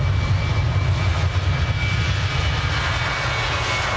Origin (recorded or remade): recorded